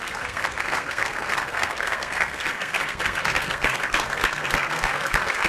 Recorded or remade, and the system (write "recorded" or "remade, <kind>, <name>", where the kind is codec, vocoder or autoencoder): remade, codec, SNAC